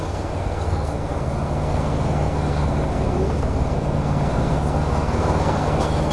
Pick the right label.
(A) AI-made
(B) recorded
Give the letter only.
A